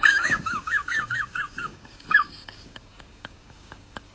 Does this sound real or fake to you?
fake